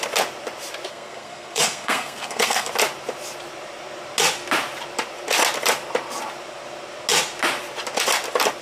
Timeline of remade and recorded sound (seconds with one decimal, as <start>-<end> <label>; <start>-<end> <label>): 0.0-0.9 recorded; 0.9-2.7 remade; 2.7-8.6 recorded